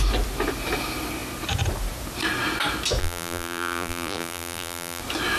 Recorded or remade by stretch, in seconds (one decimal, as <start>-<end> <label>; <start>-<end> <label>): 0.0-3.0 recorded; 3.0-5.0 remade; 5.0-5.4 recorded